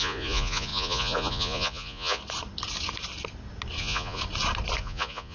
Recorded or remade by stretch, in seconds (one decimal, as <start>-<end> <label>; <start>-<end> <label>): 0.0-2.2 remade; 2.2-3.8 recorded; 3.8-4.2 remade; 4.2-4.8 recorded; 4.8-5.3 remade